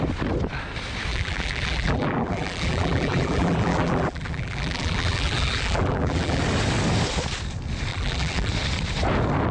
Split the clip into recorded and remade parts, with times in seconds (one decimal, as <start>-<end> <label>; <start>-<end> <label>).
0.0-1.1 recorded; 1.1-6.4 remade; 6.4-7.9 recorded; 7.9-8.5 remade; 8.5-9.5 recorded